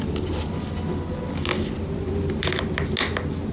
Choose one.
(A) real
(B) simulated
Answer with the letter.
A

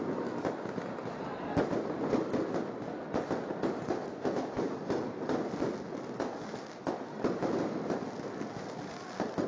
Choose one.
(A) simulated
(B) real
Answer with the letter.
B